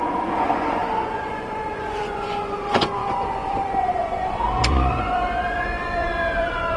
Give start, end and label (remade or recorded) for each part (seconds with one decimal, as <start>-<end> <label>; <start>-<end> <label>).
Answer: 0.0-6.8 remade